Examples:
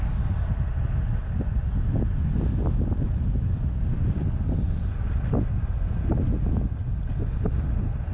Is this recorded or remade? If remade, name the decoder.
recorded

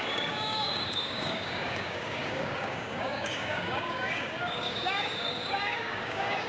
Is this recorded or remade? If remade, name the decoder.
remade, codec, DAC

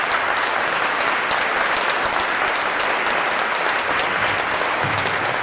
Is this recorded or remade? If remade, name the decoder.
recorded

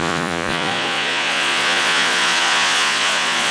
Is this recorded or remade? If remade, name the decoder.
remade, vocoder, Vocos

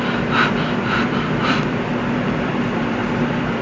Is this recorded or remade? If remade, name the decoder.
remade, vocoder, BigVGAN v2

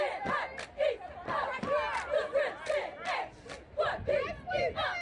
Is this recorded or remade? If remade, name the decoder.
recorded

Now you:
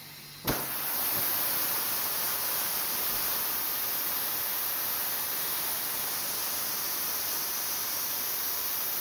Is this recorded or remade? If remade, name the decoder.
recorded